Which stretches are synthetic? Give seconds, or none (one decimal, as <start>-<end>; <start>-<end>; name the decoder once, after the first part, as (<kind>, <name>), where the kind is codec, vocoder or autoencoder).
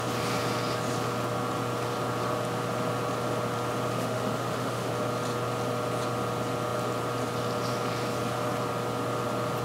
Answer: 3.9-4.9 (autoencoder, DAC-VAE)